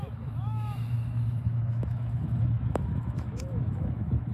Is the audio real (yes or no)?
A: no